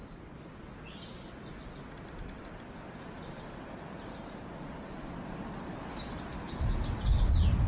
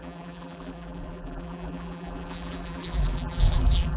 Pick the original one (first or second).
first